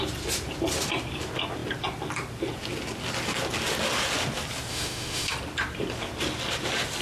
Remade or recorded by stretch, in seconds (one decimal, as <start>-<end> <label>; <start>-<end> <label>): 0.0-4.7 recorded; 4.7-5.3 remade; 5.3-7.0 recorded